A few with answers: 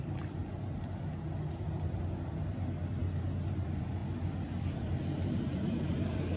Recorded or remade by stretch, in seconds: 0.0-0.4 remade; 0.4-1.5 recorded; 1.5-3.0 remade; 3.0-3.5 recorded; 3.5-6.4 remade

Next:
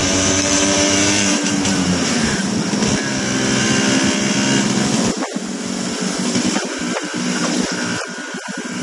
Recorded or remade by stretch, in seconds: 0.0-2.7 remade; 2.7-8.8 recorded

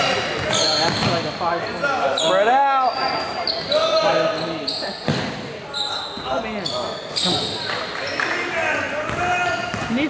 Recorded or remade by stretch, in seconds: 0.0-10.1 recorded